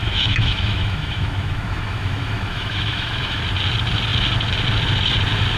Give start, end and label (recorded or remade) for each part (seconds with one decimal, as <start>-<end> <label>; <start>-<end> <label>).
0.0-3.4 remade; 3.4-5.6 recorded